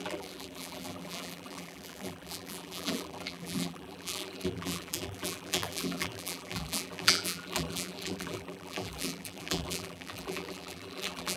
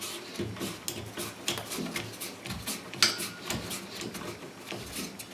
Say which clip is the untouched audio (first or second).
second